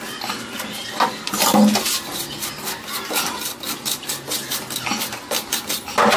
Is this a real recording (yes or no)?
yes